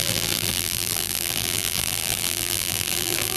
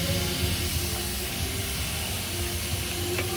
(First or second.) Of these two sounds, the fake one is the first